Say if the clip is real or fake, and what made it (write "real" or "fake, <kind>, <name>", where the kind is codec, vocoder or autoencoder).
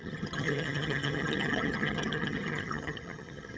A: fake, vocoder, HiFi-GAN